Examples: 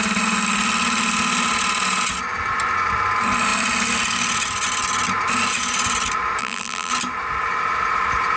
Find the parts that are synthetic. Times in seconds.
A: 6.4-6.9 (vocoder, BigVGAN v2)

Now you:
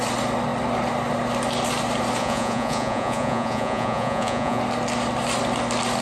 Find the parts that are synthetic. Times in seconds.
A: 2.2-4.6 (vocoder, Vocos)